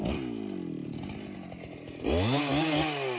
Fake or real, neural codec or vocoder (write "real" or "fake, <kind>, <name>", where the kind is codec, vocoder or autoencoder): real